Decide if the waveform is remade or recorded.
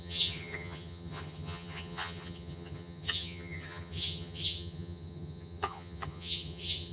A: remade